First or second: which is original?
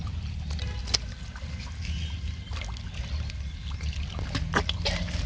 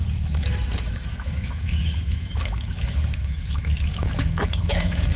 first